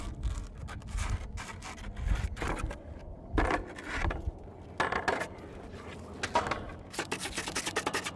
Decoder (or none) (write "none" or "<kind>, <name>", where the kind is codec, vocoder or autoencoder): none